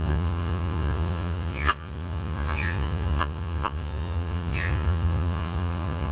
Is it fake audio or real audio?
fake